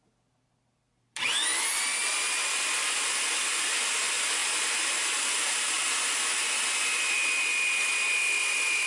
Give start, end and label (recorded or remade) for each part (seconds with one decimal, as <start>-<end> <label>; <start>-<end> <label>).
0.0-8.9 recorded